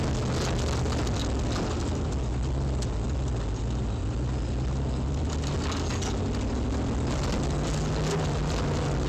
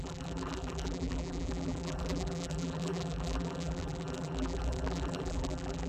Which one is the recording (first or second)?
first